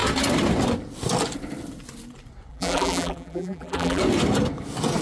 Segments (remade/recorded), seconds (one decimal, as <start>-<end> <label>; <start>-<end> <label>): 0.0-2.5 recorded; 2.5-4.0 remade; 4.0-5.0 recorded